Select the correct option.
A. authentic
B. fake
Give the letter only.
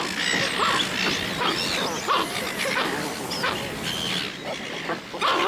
A